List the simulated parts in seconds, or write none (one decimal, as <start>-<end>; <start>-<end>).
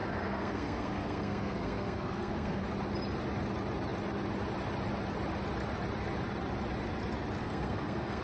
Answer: 0.0-2.6; 7.4-8.2